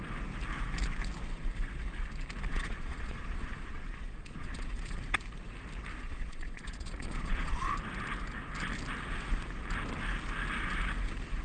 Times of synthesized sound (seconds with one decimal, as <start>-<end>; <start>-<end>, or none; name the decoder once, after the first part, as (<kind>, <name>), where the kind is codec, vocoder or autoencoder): 2.5-5.0 (vocoder, Vocos); 5.9-7.7